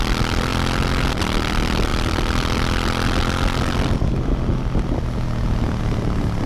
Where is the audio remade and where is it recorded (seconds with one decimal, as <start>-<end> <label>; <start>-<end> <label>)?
0.0-6.5 recorded